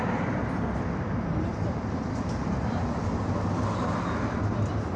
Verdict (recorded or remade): remade